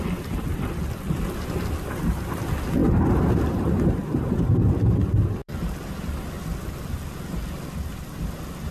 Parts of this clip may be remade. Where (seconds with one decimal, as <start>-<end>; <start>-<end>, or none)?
2.8-4.4; 5.4-6.2